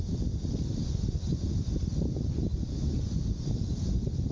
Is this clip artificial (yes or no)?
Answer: no